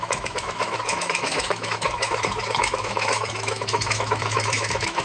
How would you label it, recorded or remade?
remade